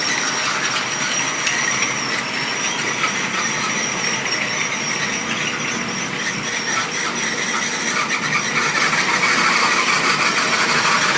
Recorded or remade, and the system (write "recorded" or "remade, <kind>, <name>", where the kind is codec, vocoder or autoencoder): recorded